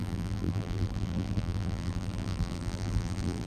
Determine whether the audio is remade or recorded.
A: remade